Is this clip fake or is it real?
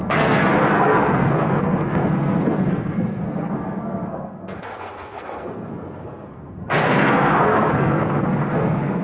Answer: fake